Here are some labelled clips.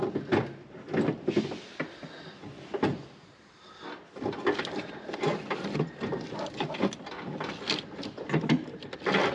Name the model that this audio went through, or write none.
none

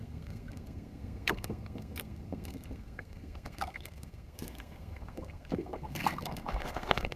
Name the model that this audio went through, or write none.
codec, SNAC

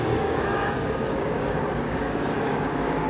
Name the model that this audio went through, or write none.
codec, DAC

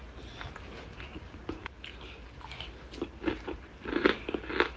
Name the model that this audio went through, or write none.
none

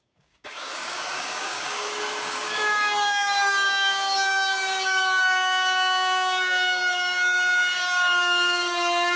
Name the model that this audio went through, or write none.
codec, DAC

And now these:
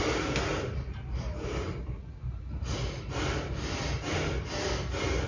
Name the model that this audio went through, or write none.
none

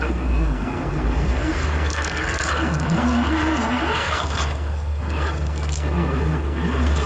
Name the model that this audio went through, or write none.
codec, SNAC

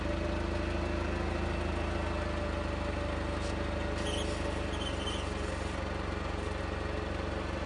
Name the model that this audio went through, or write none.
none